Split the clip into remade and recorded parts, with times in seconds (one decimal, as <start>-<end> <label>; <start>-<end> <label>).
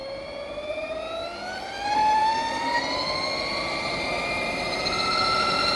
0.0-1.0 remade; 1.0-2.2 recorded; 2.2-3.1 remade; 3.1-3.5 recorded; 3.5-5.8 remade